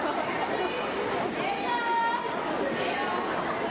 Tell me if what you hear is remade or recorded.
recorded